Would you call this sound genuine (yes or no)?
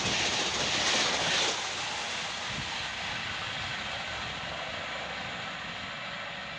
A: yes